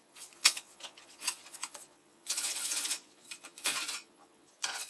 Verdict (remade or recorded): remade